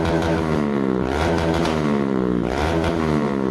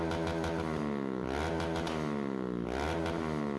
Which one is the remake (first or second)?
first